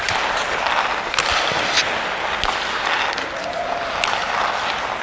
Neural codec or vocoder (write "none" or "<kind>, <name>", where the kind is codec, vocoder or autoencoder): none